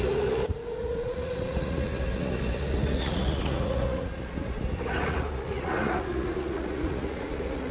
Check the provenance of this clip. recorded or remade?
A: remade